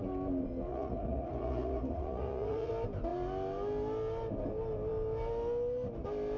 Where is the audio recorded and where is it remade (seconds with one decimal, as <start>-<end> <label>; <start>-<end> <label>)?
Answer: 0.0-0.7 recorded; 0.7-2.7 remade; 2.7-6.4 recorded